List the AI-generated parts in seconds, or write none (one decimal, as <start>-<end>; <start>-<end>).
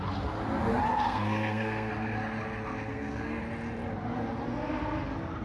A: 0.9-1.9; 2.9-3.4